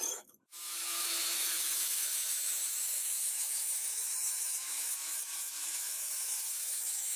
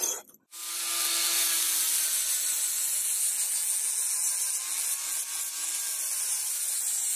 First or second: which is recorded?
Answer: second